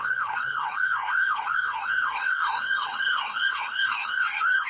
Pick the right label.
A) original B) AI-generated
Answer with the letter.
B